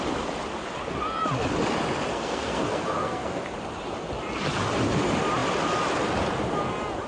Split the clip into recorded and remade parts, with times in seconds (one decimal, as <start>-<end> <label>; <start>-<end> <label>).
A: 0.0-2.1 recorded; 2.1-3.4 remade; 3.4-7.1 recorded